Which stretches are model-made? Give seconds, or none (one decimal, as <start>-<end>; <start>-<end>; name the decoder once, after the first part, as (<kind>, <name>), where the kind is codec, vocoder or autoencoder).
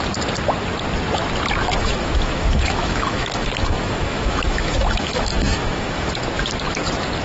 1.8-6.1 (autoencoder, DAC-VAE)